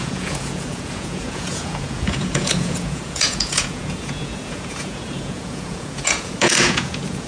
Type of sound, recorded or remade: remade